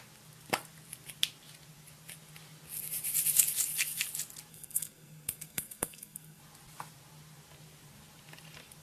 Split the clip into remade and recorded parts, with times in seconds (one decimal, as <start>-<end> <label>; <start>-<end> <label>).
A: 0.0-4.5 recorded; 4.5-6.4 remade; 6.4-8.8 recorded

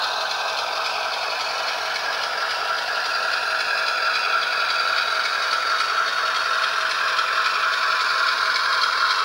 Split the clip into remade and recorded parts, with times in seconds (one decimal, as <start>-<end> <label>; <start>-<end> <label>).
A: 0.0-9.2 recorded

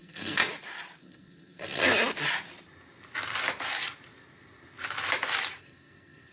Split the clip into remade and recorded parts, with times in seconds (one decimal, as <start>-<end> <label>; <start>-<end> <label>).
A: 0.0-0.4 remade; 0.4-1.0 recorded; 1.0-1.8 remade; 1.8-5.6 recorded; 5.6-6.3 remade

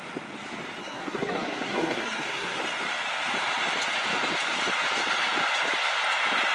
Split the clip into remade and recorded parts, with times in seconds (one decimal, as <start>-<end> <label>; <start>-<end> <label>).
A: 0.0-0.8 recorded; 0.8-2.6 remade; 2.6-6.5 recorded

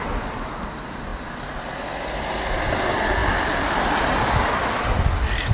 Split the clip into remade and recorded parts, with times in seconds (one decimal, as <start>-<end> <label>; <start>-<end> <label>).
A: 0.0-5.5 recorded

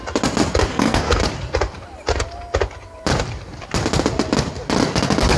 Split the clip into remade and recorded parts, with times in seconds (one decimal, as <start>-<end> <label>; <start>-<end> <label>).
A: 0.0-0.7 recorded; 0.7-1.2 remade; 1.2-5.4 recorded